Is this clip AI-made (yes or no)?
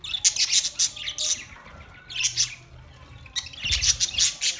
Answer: no